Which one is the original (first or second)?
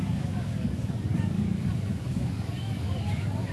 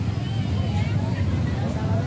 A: second